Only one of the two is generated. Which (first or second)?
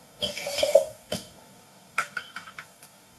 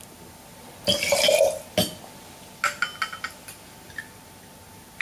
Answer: first